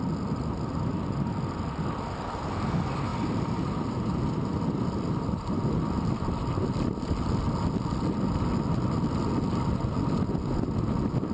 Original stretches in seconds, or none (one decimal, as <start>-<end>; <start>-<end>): 0.0-11.3